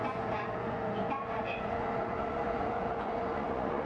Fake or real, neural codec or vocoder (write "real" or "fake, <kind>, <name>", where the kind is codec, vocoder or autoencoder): fake, vocoder, Vocos